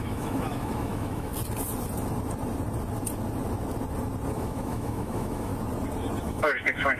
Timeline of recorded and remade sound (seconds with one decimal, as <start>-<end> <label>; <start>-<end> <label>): 0.0-1.3 remade; 1.3-4.3 recorded; 4.3-5.5 remade; 5.5-6.2 recorded; 6.2-7.0 remade